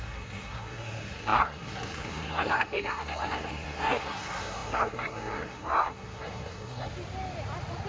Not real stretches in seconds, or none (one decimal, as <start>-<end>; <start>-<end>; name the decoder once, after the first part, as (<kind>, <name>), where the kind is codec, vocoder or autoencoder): 0.0-6.9 (codec, SNAC)